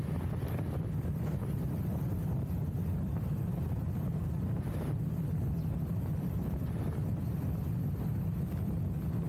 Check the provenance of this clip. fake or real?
real